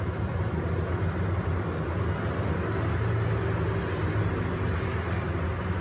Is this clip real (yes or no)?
yes